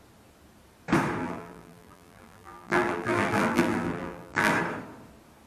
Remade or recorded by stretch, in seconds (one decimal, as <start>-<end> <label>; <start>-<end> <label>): 0.0-1.2 recorded; 1.2-4.5 remade; 4.5-5.5 recorded